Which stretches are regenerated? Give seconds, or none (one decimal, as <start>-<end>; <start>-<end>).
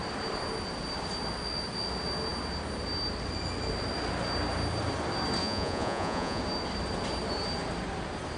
5.4-6.4